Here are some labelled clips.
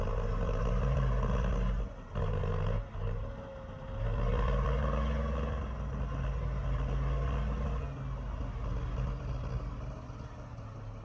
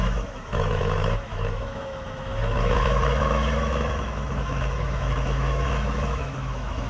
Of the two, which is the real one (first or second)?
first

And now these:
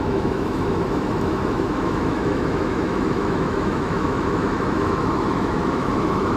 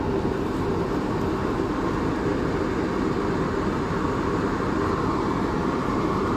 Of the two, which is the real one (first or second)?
second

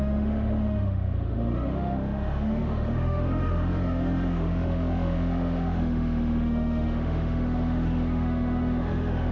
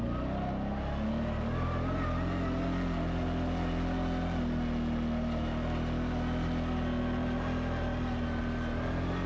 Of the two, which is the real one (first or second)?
second